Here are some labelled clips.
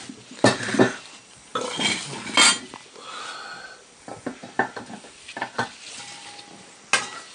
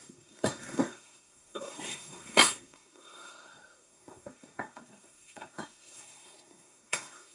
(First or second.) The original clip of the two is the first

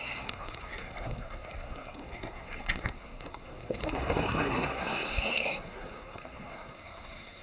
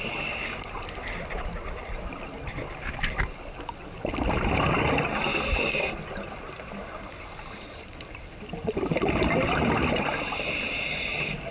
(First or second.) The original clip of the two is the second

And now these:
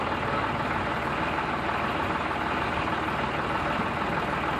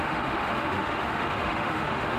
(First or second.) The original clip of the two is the first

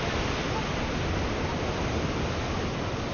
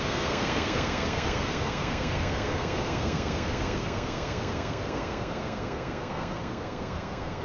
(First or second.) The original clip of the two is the first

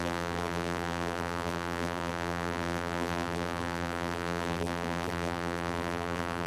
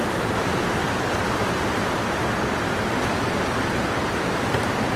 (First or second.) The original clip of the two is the second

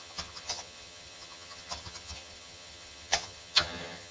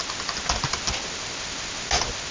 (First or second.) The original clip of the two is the second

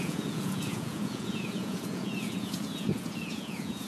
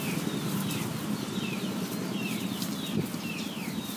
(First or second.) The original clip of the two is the second